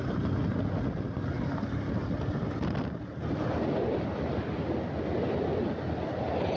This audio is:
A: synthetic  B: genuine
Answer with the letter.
B